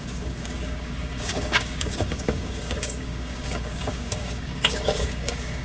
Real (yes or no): no